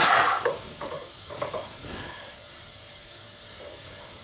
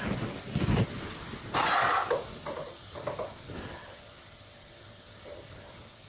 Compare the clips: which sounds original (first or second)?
second